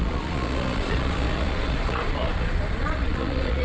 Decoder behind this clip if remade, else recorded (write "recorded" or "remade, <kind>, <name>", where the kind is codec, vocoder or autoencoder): remade, vocoder, Vocos